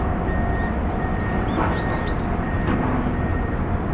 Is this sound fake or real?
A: real